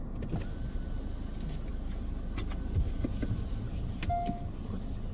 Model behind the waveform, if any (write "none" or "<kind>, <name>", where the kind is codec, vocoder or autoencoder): none